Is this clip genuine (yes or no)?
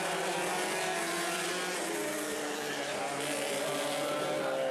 yes